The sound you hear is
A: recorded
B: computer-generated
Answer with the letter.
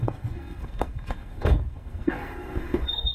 B